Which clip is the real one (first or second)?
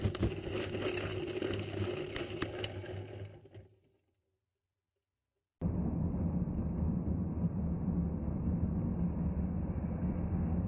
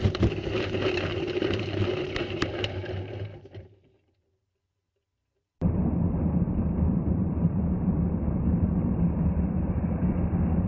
first